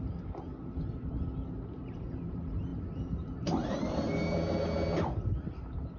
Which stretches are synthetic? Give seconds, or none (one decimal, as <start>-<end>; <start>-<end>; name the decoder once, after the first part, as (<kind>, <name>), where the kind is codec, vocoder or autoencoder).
2.7-4.6 (vocoder, BigVGAN v2)

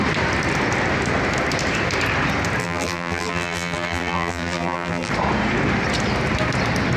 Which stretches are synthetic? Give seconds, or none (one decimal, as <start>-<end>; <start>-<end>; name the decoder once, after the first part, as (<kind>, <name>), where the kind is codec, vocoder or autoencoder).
2.6-5.1 (vocoder, BigVGAN v2)

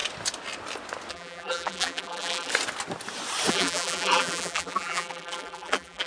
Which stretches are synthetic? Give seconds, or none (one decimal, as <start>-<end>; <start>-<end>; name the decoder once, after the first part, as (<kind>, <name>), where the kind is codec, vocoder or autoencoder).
1.1-2.5 (vocoder, BigVGAN v2); 3.5-6.1

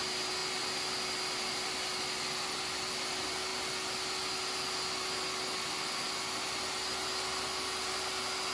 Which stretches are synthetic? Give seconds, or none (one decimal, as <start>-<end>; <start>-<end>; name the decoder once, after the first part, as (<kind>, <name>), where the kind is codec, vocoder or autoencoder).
none

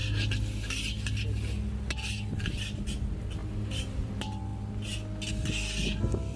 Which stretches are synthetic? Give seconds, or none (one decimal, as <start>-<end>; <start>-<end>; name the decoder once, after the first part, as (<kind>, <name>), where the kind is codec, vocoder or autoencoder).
3.4-4.1 (vocoder, BigVGAN v2)

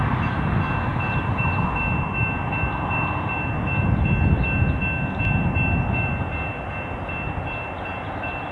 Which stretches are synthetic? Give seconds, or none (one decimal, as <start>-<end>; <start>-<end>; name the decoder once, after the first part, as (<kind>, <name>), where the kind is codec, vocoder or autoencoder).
0.9-1.7 (vocoder, BigVGAN v2)

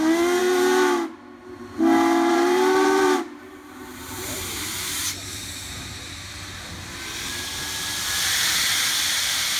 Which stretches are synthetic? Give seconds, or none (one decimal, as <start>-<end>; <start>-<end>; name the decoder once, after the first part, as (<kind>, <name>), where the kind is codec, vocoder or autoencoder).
2.3-7.4 (vocoder, BigVGAN v2)

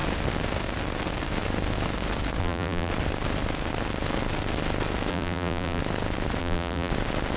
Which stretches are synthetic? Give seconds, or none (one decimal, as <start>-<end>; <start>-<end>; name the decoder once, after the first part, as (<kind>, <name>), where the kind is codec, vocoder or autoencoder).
2.4-2.9 (vocoder, BigVGAN v2); 5.1-5.8; 6.4-6.9